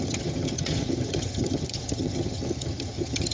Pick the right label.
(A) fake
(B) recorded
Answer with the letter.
A